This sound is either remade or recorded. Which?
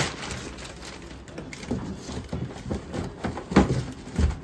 recorded